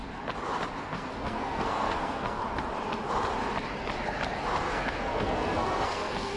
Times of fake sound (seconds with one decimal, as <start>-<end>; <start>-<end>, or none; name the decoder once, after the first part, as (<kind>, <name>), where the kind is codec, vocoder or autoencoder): 0.8-2.4 (codec, SNAC); 4.6-6.4